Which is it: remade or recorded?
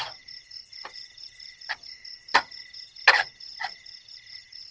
recorded